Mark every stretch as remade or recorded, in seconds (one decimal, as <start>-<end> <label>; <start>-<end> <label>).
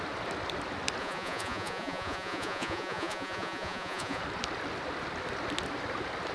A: 0.0-1.0 recorded; 1.0-4.2 remade; 4.2-6.3 recorded